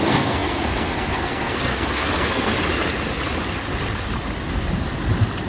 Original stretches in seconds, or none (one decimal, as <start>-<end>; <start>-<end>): 2.5-5.5